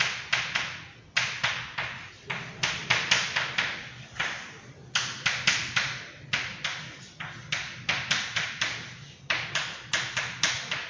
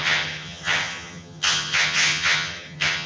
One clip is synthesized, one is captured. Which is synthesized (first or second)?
second